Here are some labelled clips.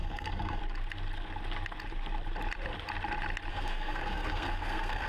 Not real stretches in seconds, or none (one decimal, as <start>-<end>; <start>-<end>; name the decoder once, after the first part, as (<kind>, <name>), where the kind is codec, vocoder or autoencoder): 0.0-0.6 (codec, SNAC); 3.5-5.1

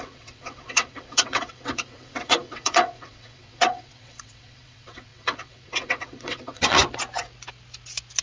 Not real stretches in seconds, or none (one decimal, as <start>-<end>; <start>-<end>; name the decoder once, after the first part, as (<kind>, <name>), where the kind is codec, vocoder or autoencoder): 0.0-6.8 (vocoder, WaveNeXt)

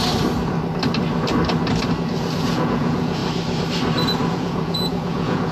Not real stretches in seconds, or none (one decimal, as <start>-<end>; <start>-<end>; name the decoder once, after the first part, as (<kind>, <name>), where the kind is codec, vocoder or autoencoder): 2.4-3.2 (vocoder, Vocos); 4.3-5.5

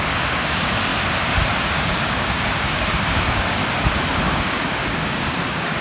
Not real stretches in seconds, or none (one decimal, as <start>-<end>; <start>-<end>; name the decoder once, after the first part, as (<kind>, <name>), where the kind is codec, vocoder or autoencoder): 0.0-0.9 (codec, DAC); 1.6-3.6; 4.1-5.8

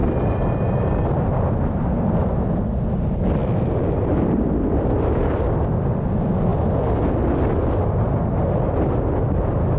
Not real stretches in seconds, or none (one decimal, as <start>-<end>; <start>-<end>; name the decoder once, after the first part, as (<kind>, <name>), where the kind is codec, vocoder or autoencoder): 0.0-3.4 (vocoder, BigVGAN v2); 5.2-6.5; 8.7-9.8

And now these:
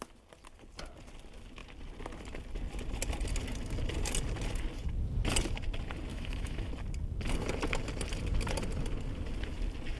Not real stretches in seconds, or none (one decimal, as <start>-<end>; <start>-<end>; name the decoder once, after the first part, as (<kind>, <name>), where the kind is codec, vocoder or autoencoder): 6.1-6.7 (autoencoder, DAC-VAE)